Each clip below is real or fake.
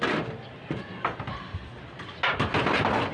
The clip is real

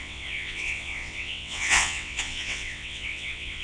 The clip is fake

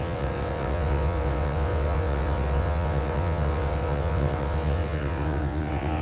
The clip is fake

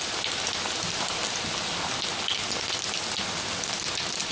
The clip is real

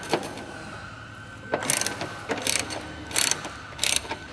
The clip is real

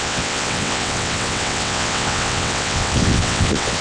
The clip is fake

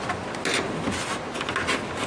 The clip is real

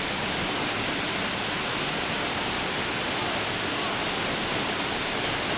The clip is real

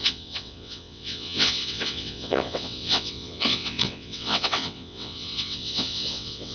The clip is fake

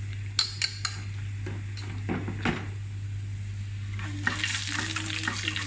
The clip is real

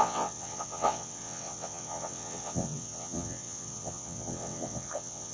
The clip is fake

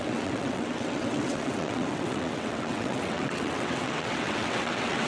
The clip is fake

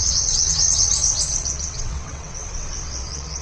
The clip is fake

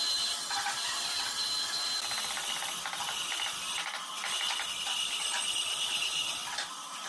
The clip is real